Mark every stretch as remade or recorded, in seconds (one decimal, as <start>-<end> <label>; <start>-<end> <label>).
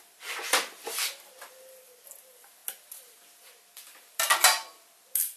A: 0.0-5.4 recorded